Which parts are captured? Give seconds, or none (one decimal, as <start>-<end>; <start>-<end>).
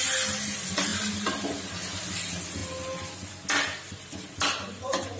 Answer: 0.0-5.2